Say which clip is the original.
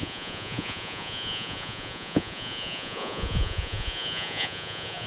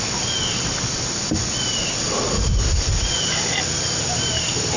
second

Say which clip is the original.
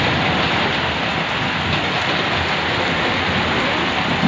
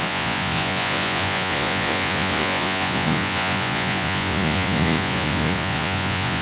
first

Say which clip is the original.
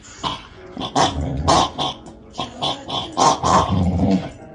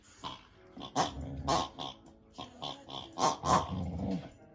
second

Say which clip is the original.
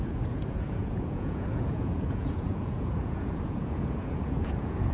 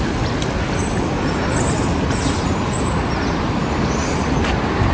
second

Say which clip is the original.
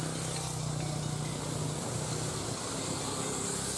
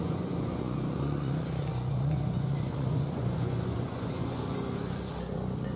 first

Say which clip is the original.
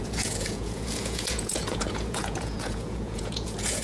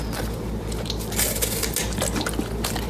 second